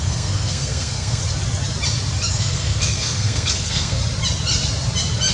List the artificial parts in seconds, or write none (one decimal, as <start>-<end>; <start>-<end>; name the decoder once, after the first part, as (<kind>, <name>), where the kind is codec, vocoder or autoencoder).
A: 0.0-1.2 (codec, SNAC); 2.3-4.0